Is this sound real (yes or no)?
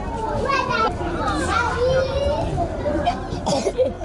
yes